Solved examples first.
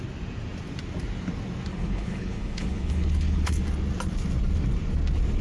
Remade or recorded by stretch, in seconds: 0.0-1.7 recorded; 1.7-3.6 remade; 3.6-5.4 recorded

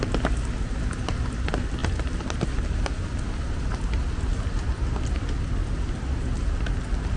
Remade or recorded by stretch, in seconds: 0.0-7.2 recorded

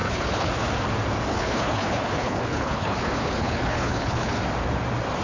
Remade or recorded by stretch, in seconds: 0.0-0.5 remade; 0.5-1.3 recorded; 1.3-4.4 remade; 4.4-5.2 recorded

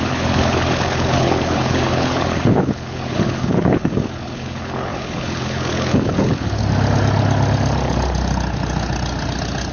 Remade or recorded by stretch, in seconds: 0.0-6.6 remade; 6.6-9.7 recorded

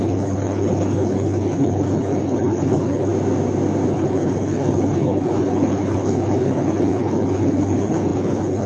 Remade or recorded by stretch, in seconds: 0.0-3.1 remade; 3.1-3.9 recorded; 3.9-8.7 remade